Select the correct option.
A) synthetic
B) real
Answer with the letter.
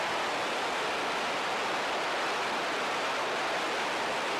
B